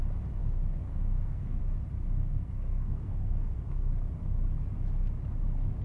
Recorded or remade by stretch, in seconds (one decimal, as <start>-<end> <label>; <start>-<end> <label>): 0.0-0.4 recorded; 0.4-1.6 remade; 1.6-2.2 recorded; 2.2-3.9 remade; 3.9-5.8 recorded